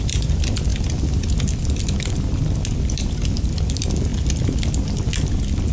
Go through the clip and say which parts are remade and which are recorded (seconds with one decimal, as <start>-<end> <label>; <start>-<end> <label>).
0.0-5.7 recorded